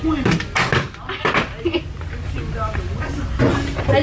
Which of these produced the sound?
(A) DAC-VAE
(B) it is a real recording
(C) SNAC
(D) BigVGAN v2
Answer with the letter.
B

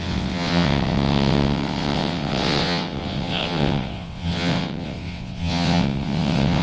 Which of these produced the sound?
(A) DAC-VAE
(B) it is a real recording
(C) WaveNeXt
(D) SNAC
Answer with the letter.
C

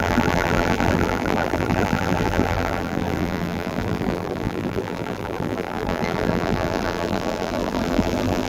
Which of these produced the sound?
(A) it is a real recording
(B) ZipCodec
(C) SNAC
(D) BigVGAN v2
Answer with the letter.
D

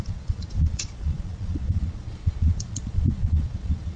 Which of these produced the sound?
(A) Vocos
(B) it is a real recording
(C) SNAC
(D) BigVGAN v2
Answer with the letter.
A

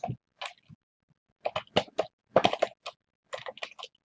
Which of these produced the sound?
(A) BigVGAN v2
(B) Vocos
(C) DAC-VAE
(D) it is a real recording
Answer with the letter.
D